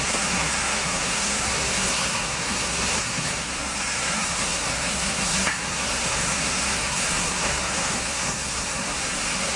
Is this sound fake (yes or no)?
yes